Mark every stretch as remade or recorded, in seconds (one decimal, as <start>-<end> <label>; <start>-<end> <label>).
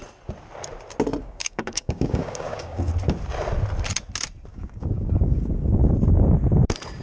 0.0-1.2 recorded; 1.2-2.9 remade; 2.9-4.5 recorded; 4.5-5.8 remade; 5.8-7.0 recorded